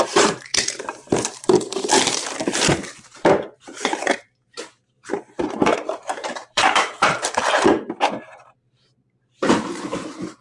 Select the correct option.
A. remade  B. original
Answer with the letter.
A